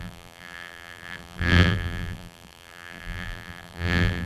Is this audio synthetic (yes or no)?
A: yes